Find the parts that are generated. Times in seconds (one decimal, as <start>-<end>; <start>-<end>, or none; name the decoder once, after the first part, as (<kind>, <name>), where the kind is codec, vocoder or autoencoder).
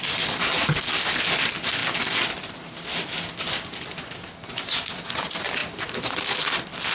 none